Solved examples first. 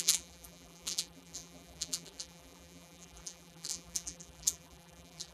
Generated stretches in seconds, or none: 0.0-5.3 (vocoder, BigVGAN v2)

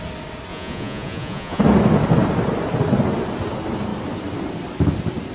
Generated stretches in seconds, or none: 0.5-1.6 (vocoder, Vocos)